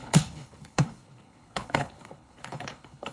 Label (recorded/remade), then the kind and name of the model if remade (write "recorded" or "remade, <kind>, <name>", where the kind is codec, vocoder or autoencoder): remade, codec, HILCodec